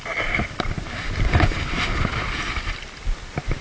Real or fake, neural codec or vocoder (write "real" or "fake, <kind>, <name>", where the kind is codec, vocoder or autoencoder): real